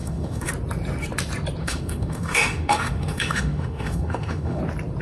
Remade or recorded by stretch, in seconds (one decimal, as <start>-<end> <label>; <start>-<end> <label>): 0.0-0.5 remade; 0.5-1.6 recorded; 1.6-4.6 remade; 4.6-5.0 recorded